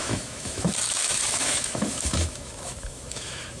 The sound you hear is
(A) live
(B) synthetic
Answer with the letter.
B